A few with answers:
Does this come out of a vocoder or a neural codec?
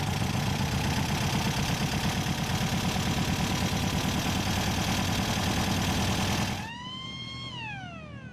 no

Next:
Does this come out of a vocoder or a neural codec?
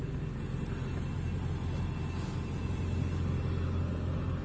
no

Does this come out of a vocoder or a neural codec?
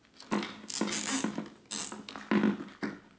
no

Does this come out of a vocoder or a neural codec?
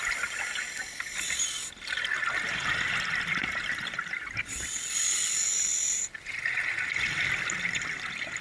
no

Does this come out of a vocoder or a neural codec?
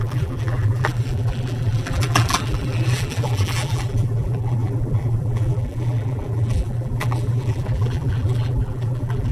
yes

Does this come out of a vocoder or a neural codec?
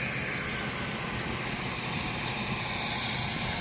no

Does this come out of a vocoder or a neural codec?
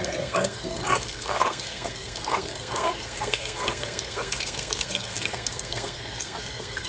yes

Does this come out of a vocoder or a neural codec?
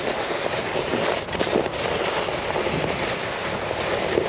no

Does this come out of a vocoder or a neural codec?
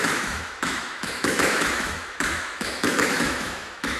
yes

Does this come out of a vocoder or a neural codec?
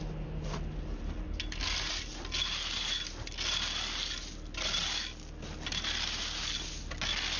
no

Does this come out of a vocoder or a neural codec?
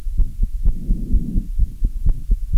no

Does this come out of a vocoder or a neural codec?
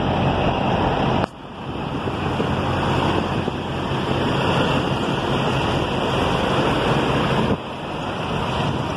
no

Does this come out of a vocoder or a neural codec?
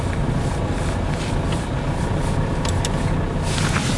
no